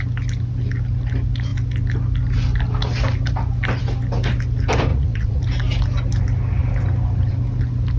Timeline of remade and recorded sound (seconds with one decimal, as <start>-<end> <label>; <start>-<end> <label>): 0.0-4.9 recorded; 4.9-5.4 remade; 5.4-8.0 recorded